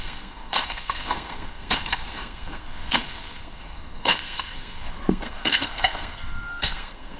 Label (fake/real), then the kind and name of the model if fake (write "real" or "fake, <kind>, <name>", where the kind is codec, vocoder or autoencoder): fake, codec, SNAC